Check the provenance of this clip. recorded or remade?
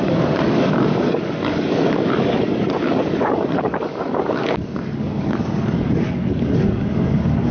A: remade